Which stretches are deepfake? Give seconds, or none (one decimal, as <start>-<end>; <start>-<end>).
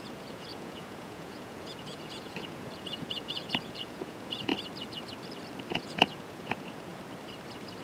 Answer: 0.0-4.5; 5.7-6.9